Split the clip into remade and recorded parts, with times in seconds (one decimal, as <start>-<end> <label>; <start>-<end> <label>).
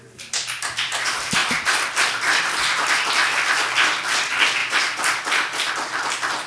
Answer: 0.0-4.6 recorded; 4.6-5.7 remade; 5.7-6.5 recorded